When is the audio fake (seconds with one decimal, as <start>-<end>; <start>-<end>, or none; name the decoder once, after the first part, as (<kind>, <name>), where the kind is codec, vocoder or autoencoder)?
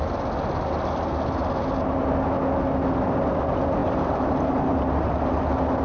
3.8-5.3 (vocoder, BigVGAN v2)